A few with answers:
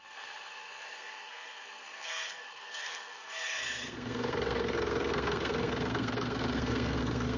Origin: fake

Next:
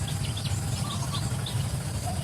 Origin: real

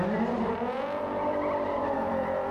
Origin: fake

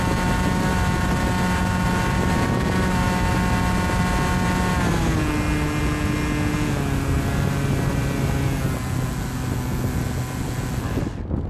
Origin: real